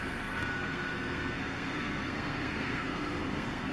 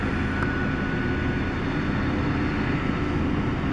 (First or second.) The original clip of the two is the second